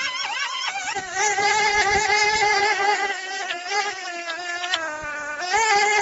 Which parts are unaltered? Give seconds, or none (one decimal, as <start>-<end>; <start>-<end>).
0.0-0.5; 4.1-6.0